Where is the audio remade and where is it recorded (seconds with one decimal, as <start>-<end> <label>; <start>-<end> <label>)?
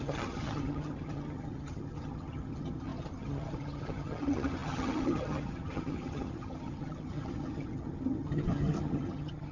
0.0-9.5 remade